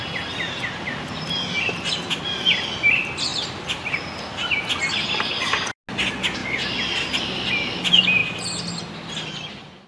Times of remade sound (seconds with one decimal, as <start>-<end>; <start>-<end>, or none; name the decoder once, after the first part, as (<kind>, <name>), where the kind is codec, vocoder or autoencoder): 3.3-4.5 (vocoder, BigVGAN v2)